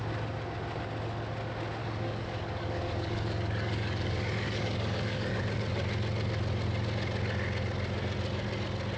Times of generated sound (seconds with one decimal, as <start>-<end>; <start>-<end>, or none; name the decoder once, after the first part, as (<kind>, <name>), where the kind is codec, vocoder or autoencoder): 1.8-5.4 (codec, DAC)